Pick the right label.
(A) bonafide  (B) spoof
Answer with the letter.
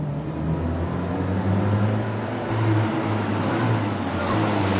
A